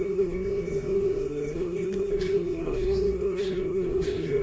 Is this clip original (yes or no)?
no